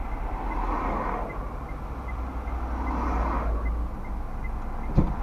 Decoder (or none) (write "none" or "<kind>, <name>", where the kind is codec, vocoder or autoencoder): none